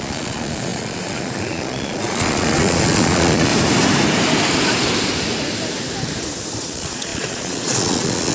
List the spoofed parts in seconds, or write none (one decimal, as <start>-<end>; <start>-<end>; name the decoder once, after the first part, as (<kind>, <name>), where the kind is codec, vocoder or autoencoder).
0.0-3.5 (vocoder, Vocos); 6.6-8.3